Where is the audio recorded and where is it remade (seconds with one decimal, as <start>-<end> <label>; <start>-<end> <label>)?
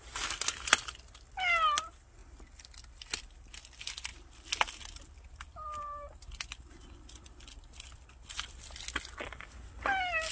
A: 0.0-10.3 recorded